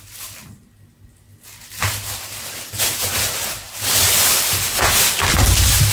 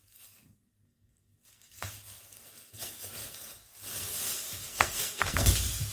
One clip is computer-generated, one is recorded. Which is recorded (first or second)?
first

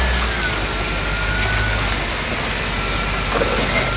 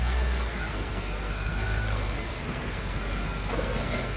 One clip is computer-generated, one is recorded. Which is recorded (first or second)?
first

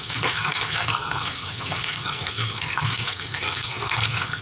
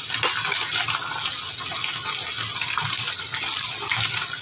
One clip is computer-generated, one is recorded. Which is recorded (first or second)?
second